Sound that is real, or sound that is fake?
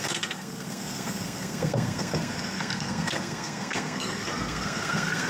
fake